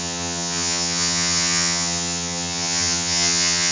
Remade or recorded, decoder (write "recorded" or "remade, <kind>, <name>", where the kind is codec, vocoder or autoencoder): remade, vocoder, HiFi-GAN